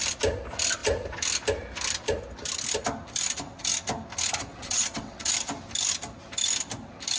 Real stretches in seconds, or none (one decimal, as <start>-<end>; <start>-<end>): 0.0-4.5; 5.3-7.2